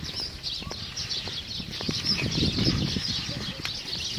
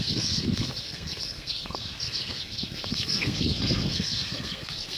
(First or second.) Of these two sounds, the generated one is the second